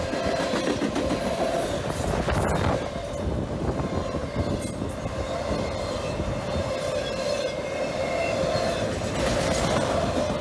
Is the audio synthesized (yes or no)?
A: no